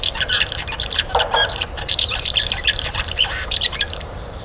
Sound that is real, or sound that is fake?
fake